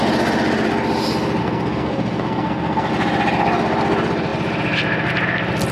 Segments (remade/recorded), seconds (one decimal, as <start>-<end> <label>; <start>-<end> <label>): 0.0-1.4 recorded; 1.4-2.9 remade; 2.9-5.7 recorded